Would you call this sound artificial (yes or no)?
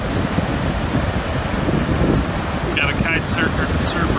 no